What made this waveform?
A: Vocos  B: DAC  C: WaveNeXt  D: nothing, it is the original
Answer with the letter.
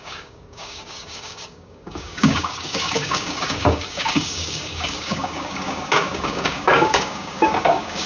B